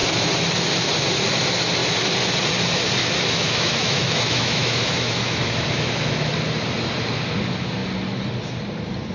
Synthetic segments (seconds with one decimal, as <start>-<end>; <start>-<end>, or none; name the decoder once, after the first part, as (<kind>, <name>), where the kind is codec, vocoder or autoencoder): 3.0-6.3 (autoencoder, DAC-VAE)